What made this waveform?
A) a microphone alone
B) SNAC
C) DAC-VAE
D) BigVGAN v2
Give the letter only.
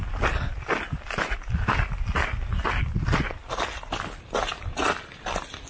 A